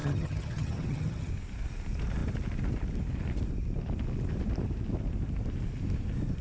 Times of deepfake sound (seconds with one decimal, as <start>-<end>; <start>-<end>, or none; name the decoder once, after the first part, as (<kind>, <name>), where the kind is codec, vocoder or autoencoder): 0.0-1.3 (vocoder, HiFi-GAN)